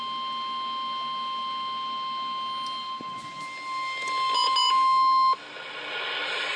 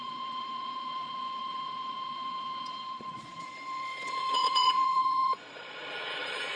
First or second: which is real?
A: first